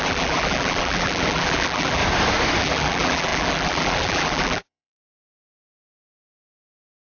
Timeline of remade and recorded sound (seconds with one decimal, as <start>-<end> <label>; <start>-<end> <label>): 0.0-2.0 remade; 2.0-2.6 recorded; 2.6-7.1 remade